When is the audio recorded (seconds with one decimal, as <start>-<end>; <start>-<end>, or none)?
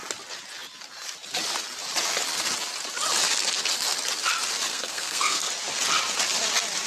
0.0-4.7; 5.5-6.9